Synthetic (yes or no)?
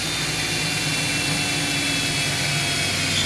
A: no